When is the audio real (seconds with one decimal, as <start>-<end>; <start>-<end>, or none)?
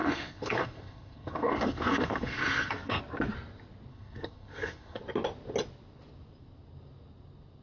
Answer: 3.0-3.9; 5.0-7.6